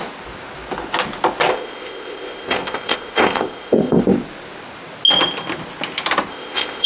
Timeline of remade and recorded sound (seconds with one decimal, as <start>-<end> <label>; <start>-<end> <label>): 0.0-1.5 recorded; 1.5-4.0 remade; 4.0-6.3 recorded; 6.3-6.9 remade